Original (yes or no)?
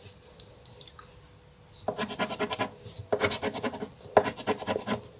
yes